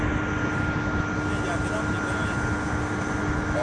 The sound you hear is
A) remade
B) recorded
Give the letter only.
B